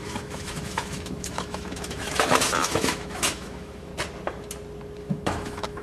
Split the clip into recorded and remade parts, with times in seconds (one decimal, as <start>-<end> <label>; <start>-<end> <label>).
0.0-3.9 remade; 3.9-5.0 recorded; 5.0-5.8 remade

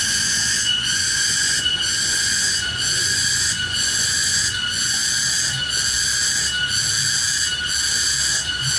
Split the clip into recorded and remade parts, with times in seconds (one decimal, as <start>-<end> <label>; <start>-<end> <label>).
0.0-5.0 remade; 5.0-8.3 recorded; 8.3-8.8 remade

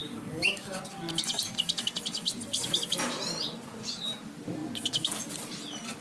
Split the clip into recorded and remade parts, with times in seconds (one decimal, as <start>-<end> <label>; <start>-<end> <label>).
0.0-0.8 remade; 0.8-6.0 recorded

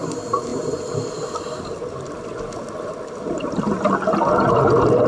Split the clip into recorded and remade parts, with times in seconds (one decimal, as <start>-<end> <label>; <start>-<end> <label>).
0.0-5.1 recorded

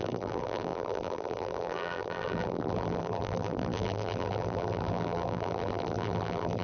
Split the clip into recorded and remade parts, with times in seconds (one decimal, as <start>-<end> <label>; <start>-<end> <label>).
0.0-6.6 remade

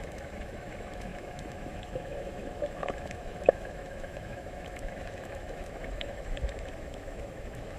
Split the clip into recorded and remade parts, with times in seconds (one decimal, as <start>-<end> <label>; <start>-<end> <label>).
0.0-7.8 remade